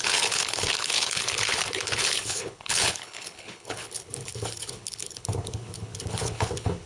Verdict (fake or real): fake